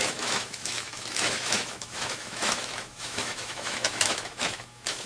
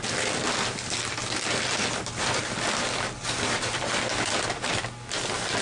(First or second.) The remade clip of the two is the first